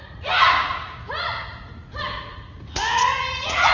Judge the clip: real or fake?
fake